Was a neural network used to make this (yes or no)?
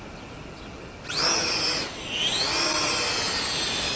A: no